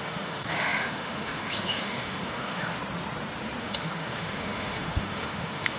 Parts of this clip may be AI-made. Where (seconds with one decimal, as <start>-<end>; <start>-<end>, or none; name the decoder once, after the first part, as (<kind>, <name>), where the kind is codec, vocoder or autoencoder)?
0.0-2.8 (autoencoder, DAC-VAE); 3.6-5.8